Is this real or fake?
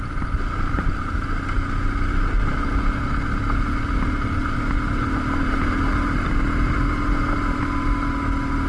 real